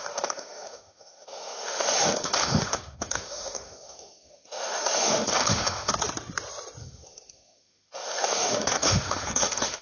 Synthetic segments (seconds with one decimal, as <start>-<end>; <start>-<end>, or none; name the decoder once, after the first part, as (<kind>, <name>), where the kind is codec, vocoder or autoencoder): 0.0-5.9 (autoencoder, DAC-VAE); 6.8-9.8